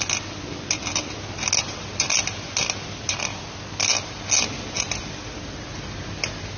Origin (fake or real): real